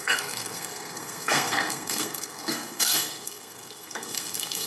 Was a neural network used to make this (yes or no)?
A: yes